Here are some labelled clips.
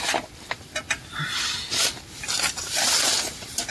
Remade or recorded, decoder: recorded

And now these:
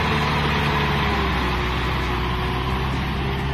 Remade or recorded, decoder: recorded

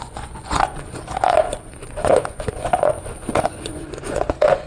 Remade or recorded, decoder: remade, vocoder, Vocos